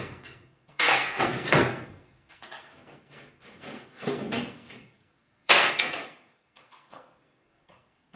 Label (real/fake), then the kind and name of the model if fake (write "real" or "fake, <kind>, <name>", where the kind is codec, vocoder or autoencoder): fake, codec, SNAC